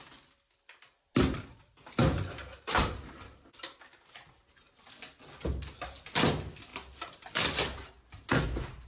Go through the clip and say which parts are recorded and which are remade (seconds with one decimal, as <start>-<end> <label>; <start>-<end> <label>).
0.0-8.9 recorded